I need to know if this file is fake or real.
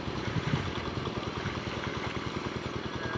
real